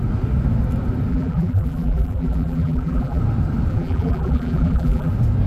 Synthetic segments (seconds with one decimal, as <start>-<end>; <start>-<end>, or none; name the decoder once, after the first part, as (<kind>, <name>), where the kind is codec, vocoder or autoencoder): 1.1-3.2 (vocoder, BigVGAN v2); 3.7-5.1